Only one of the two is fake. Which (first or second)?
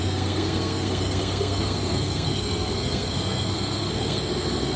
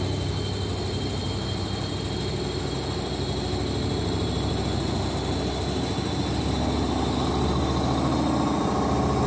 first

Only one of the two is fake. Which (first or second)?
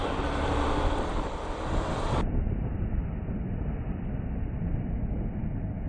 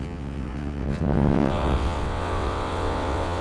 second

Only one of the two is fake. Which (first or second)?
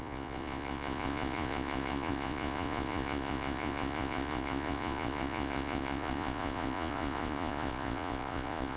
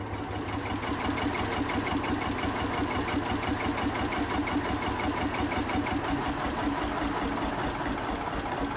first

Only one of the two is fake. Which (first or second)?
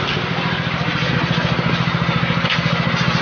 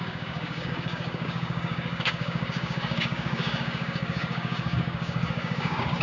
second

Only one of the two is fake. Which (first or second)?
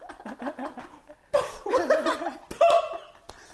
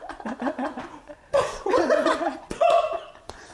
second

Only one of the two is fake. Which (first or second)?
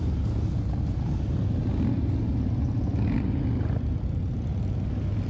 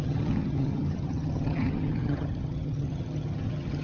second